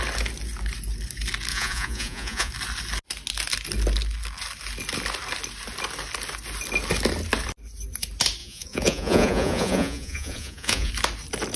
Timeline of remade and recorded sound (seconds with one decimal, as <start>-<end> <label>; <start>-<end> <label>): 0.0-1.5 recorded; 1.5-2.5 remade; 2.5-8.4 recorded; 8.4-10.9 remade; 10.9-11.6 recorded